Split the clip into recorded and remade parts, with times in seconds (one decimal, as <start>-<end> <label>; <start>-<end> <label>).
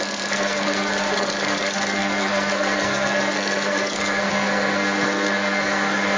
0.0-6.2 remade